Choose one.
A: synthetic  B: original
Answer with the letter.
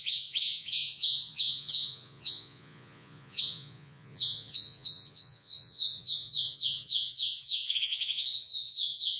A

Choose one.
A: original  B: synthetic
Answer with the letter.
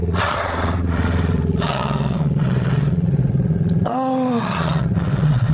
B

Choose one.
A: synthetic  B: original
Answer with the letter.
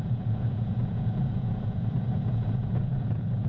A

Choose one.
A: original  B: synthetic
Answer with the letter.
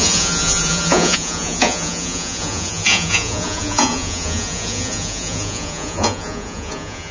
B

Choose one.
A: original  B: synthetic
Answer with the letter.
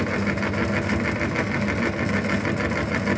A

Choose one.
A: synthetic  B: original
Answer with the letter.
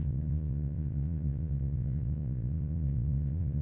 A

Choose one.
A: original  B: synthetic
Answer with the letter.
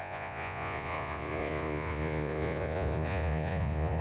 B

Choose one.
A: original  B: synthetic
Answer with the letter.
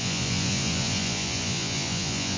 B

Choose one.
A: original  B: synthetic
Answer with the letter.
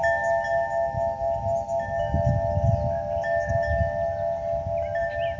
A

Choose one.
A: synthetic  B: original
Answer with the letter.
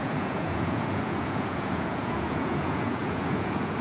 A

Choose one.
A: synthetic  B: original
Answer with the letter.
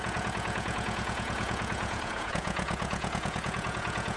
A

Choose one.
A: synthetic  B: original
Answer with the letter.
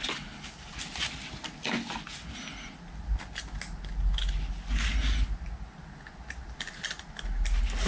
B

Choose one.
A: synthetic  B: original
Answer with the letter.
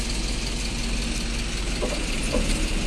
B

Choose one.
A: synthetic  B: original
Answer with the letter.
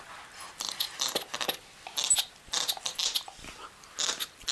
B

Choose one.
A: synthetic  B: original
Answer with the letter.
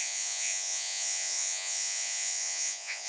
A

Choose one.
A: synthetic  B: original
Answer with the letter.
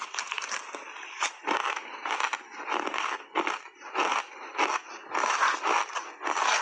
B